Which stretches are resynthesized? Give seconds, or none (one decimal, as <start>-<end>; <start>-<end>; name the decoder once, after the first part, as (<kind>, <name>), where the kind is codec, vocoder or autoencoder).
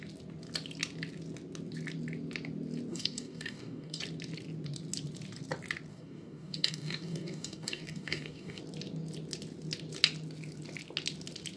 2.9-4.0 (codec, DAC); 5.9-8.6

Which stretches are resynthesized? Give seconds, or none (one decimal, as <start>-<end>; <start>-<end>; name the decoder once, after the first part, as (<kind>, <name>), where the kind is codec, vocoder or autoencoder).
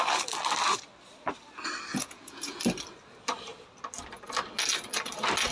1.9-2.6 (vocoder, Vocos)